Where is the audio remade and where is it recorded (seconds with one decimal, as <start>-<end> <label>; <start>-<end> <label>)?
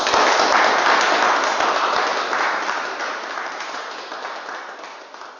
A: 0.0-2.1 recorded; 2.1-4.7 remade; 4.7-5.4 recorded